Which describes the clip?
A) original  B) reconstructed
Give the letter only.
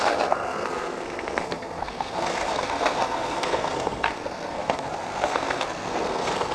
B